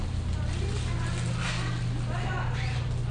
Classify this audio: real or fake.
real